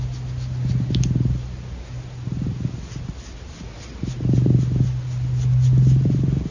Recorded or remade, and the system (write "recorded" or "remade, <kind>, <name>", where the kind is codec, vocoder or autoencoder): recorded